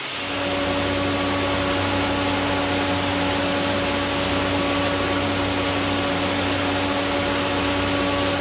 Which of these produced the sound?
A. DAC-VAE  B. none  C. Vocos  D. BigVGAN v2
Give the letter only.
B